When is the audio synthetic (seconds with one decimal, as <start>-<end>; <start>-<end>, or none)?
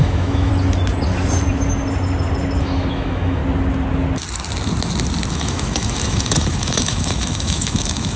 0.0-0.5; 2.6-3.4; 5.3-8.2